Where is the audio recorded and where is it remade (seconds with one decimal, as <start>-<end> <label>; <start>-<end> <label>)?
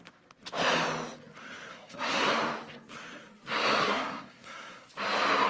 0.0-1.7 recorded; 1.7-2.3 remade; 2.3-3.8 recorded; 3.8-4.9 remade; 4.9-5.5 recorded